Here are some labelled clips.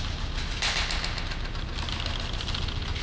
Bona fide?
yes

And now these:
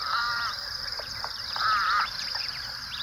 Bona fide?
no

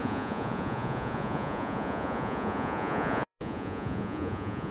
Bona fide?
no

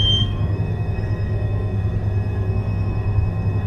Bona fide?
no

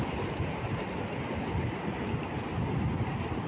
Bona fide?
yes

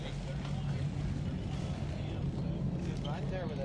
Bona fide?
yes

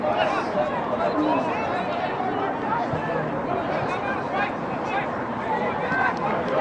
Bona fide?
yes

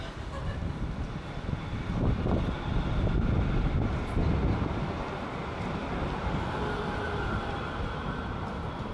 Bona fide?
yes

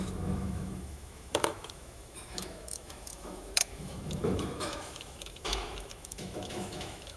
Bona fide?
no